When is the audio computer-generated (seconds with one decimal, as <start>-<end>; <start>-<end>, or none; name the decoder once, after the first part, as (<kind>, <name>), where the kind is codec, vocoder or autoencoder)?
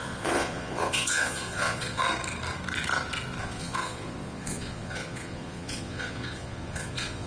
0.0-2.0 (vocoder, Vocos); 3.4-7.3